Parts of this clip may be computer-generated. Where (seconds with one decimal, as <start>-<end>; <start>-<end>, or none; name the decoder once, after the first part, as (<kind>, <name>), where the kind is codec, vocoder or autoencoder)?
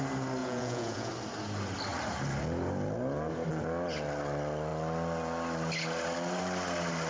0.4-1.1 (vocoder, Vocos)